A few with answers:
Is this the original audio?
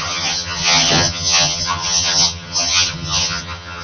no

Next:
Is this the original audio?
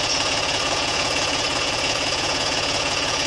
no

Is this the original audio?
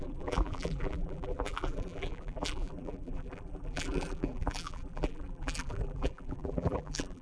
no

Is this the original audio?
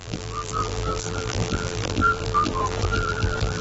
no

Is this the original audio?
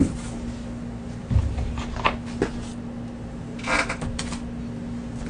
yes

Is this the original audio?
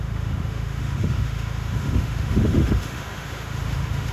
no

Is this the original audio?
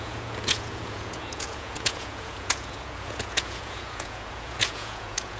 no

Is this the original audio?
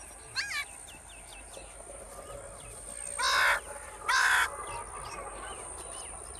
yes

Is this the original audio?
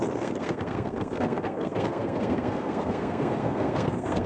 no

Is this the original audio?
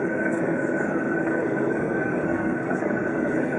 no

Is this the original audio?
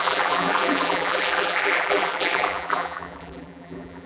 no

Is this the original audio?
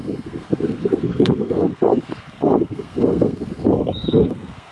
no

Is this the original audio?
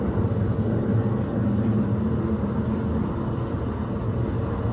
yes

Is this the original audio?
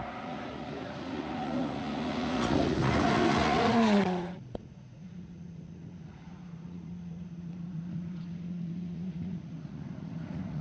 no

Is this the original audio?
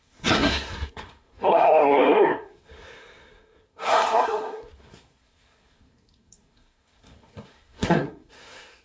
no